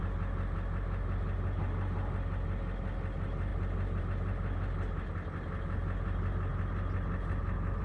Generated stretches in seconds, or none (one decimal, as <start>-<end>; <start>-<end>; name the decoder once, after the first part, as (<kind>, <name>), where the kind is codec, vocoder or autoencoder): none